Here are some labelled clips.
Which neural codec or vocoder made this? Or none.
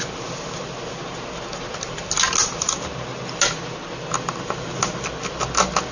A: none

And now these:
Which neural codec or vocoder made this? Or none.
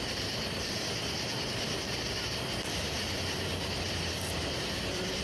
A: vocoder, BigVGAN v2